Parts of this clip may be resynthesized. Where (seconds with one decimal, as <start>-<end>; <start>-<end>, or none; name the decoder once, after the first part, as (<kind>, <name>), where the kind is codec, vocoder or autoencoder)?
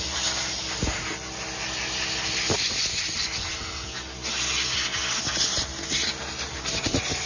none